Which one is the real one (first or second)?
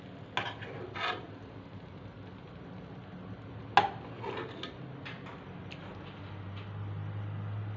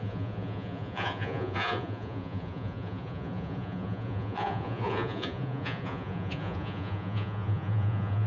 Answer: first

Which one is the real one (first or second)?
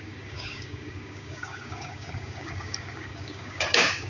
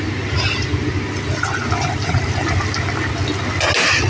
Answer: second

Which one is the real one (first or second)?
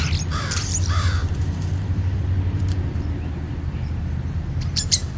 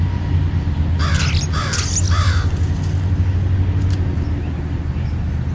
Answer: second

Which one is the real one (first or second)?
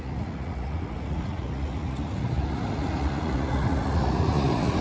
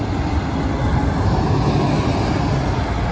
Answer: second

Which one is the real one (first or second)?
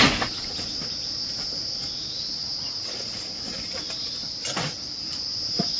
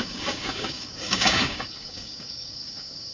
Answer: first